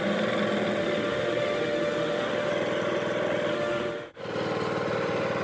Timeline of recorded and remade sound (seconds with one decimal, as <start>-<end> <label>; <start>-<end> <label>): 0.0-0.8 recorded; 0.8-2.5 remade; 2.5-3.5 recorded; 3.5-4.2 remade; 4.2-5.4 recorded